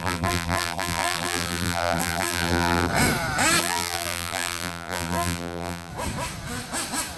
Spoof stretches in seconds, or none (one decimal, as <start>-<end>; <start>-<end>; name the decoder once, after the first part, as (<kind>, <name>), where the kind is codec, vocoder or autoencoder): 0.0-2.9 (vocoder, BigVGAN v2); 3.6-5.9